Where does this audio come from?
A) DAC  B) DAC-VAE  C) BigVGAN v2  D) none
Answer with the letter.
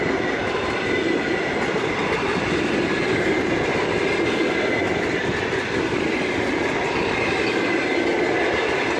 D